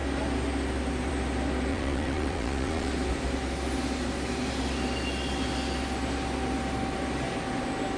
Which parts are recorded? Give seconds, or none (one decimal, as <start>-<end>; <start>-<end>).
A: 0.0-1.7; 2.9-8.0